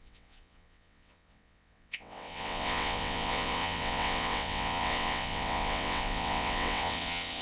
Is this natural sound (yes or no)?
no